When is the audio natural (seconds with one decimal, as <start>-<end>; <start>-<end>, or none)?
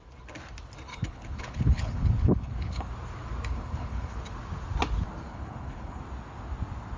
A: 0.0-0.9; 2.9-3.5; 4.2-5.3; 6.0-7.0